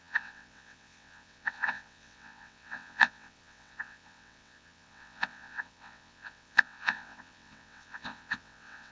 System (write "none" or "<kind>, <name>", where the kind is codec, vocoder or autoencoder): vocoder, WaveNeXt